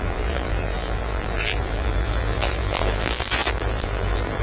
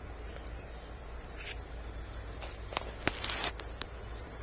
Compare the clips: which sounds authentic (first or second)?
second